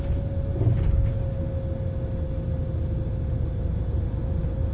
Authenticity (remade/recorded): recorded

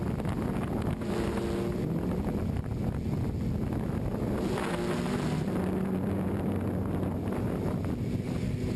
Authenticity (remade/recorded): recorded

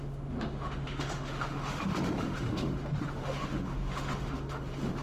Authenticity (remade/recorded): remade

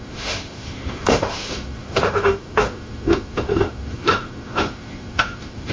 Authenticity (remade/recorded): remade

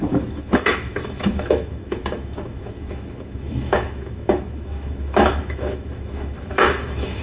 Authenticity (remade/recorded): remade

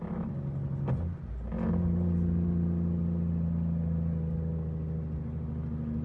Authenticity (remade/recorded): recorded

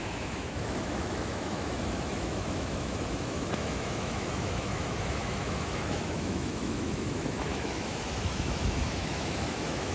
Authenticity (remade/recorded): remade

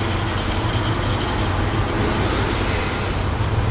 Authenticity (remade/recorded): recorded